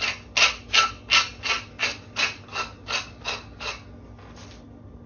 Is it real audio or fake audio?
real